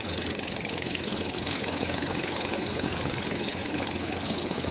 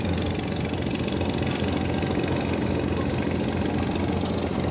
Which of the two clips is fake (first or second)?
first